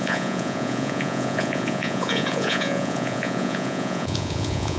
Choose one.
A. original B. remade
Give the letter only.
B